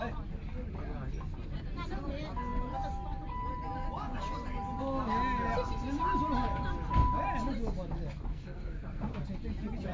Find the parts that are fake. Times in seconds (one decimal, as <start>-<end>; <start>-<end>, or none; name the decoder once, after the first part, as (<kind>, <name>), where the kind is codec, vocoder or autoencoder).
8.3-9.1 (codec, SNAC)